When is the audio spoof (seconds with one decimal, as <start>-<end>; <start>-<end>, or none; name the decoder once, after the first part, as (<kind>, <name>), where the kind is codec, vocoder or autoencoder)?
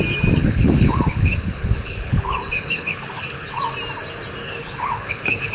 0.4-3.6 (codec, HILCodec); 4.4-5.5